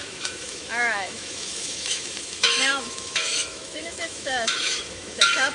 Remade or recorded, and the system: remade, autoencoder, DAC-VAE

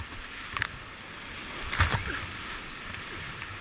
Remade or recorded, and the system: remade, vocoder, BigVGAN v2